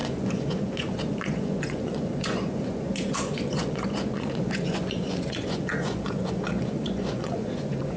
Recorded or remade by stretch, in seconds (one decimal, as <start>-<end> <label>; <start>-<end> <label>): 0.0-8.0 remade